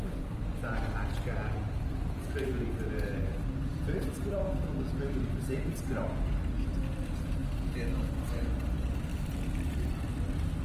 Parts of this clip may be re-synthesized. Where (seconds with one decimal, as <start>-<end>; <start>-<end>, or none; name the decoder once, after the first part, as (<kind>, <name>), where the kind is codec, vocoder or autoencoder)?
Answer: 9.1-9.7 (vocoder, BigVGAN v2)